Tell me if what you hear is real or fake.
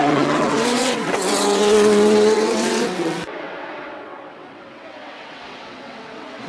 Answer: fake